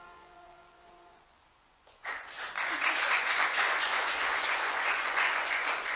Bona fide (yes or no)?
no